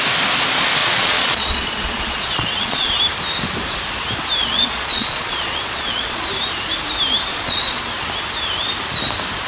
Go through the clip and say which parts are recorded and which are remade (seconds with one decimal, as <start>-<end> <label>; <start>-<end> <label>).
0.0-0.8 recorded; 0.8-3.0 remade; 3.0-4.4 recorded; 4.4-6.3 remade; 6.3-7.3 recorded; 7.3-7.8 remade; 7.8-9.5 recorded